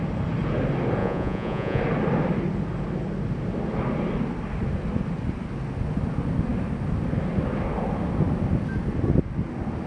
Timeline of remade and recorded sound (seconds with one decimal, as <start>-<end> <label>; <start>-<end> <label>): 0.0-1.0 recorded; 1.0-1.8 remade; 1.8-9.9 recorded